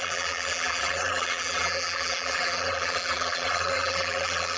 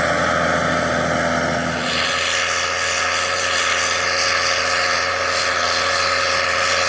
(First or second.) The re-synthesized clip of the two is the first